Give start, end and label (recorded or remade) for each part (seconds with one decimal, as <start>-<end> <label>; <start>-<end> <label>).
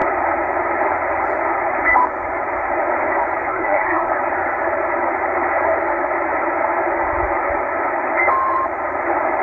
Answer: 0.0-3.5 recorded; 3.5-4.1 remade; 4.1-9.4 recorded